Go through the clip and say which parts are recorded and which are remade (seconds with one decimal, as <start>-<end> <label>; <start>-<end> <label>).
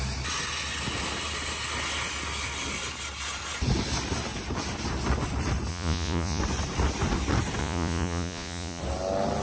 0.0-5.7 recorded; 5.7-6.4 remade; 6.4-7.6 recorded; 7.6-8.8 remade; 8.8-9.4 recorded